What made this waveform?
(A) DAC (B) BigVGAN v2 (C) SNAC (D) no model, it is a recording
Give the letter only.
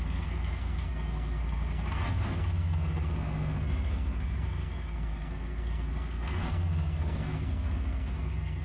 C